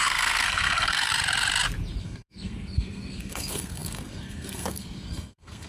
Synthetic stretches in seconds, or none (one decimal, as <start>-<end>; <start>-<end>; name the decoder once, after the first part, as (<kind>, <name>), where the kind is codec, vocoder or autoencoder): 0.0-1.1 (codec, SNAC); 2.0-5.7